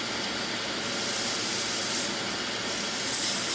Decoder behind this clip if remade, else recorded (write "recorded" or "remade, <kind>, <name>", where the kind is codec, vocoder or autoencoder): recorded